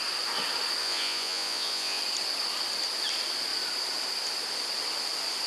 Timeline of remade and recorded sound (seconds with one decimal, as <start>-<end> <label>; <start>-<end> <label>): 0.0-0.8 recorded; 0.8-2.0 remade; 2.0-5.5 recorded